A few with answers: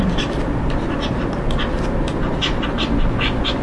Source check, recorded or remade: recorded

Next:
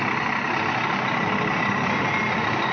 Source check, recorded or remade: recorded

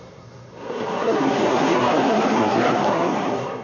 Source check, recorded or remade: remade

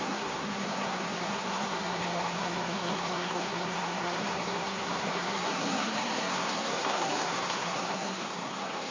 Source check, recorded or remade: remade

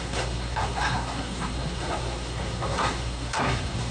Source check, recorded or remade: remade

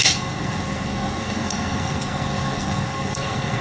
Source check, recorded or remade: remade